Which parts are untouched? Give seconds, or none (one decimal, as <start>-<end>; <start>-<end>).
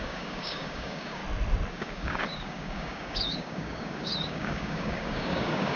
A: 1.2-1.7